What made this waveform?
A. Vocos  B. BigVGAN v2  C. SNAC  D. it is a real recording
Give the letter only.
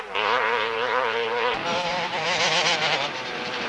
B